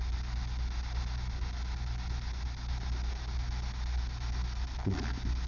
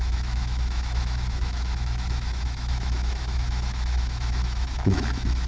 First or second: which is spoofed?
second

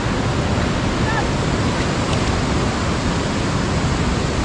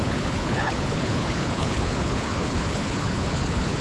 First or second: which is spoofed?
second